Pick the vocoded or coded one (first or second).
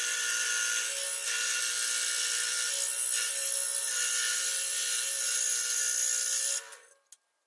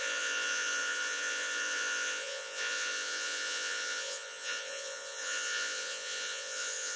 second